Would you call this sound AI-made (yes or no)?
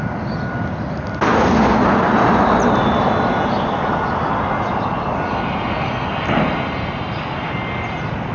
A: no